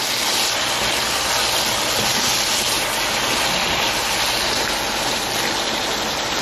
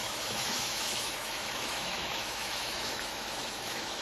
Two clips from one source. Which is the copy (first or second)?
second